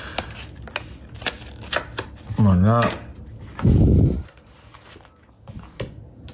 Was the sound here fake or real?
real